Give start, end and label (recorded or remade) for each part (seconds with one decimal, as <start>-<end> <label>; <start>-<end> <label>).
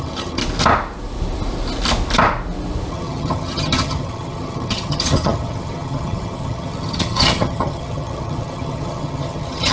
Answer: 0.0-0.4 remade; 0.4-2.9 recorded; 2.9-9.7 remade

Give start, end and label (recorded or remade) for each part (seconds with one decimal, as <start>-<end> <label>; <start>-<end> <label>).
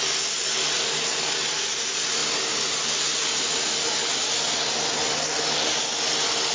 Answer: 0.0-6.5 recorded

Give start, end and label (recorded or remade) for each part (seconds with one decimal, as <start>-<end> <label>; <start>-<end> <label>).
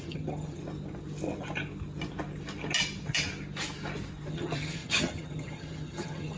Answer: 0.0-0.6 remade; 0.6-4.3 recorded; 4.3-6.4 remade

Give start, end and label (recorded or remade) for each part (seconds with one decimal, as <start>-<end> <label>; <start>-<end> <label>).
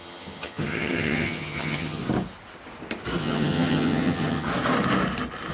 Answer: 0.0-2.0 remade; 2.0-3.2 recorded; 3.2-4.5 remade; 4.5-5.5 recorded